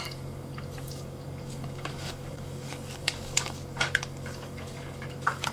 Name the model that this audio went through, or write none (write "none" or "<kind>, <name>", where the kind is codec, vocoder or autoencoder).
codec, DAC